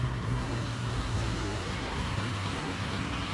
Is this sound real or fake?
fake